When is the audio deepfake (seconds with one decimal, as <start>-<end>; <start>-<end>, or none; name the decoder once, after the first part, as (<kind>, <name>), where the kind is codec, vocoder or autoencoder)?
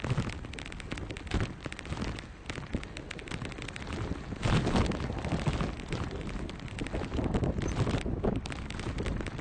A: none